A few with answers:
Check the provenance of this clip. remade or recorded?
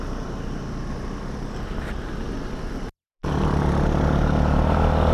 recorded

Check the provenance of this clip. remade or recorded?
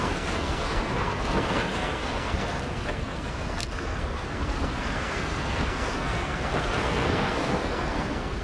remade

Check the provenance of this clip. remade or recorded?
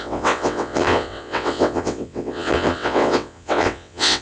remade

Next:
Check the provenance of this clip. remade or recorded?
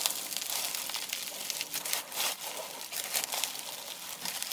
recorded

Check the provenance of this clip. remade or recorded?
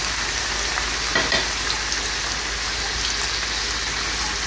recorded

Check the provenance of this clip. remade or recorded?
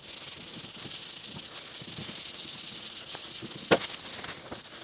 recorded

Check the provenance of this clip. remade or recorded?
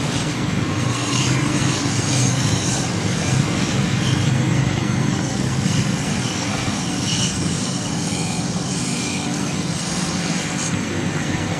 remade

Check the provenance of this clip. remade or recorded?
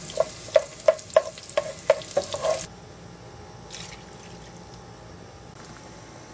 recorded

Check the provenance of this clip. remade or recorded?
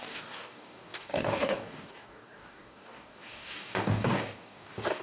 remade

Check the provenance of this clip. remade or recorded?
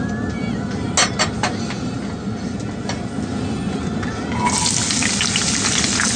recorded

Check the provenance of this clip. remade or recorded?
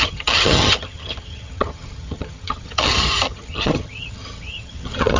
remade